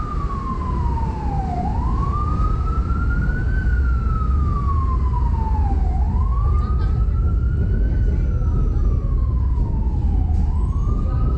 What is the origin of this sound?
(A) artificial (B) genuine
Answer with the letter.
B